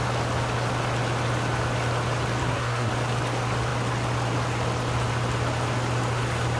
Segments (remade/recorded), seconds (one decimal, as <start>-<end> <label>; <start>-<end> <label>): 0.0-2.4 recorded; 2.4-2.9 remade; 2.9-6.6 recorded